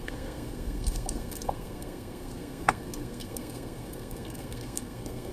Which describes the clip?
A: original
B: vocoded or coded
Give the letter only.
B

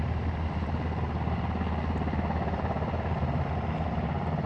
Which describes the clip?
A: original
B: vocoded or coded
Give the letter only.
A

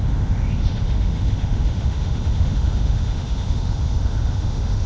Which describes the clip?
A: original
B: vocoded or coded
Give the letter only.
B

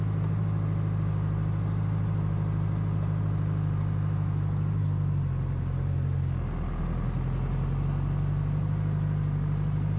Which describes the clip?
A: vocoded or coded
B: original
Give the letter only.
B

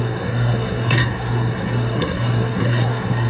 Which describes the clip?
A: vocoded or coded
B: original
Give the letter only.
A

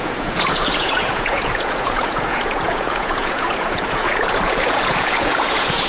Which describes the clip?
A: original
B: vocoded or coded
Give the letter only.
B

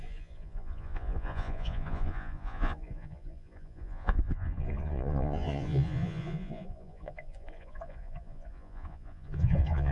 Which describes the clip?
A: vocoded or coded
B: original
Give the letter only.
A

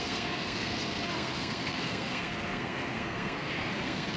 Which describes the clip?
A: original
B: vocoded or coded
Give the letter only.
B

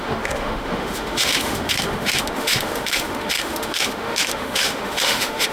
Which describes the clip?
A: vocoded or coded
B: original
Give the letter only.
A